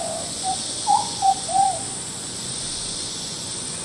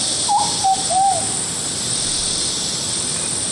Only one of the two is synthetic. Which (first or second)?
first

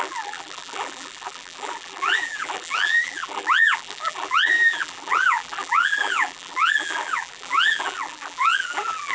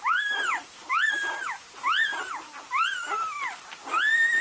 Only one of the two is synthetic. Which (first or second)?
first